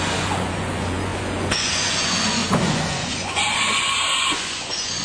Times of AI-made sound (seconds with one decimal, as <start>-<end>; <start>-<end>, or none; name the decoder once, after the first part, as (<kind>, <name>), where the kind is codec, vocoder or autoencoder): 0.0-5.0 (vocoder, Vocos)